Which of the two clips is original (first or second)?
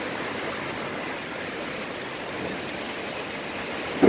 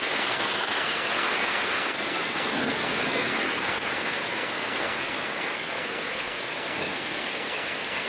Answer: first